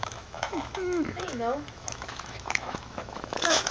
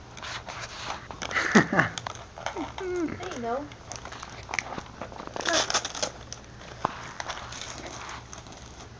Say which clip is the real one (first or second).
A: second